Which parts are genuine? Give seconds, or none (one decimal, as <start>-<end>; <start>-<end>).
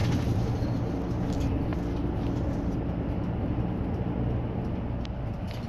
0.0-5.7